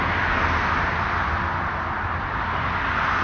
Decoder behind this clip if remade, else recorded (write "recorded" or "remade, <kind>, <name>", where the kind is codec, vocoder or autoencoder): recorded